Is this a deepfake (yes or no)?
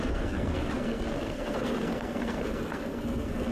yes